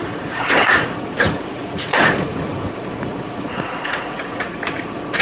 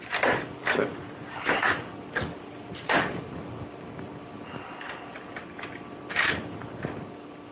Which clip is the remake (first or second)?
first